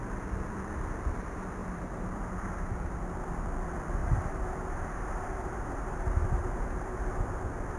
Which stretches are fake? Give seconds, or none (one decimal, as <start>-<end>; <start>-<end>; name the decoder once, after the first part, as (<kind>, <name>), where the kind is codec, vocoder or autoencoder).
1.6-2.5 (vocoder, BigVGAN v2); 4.0-7.0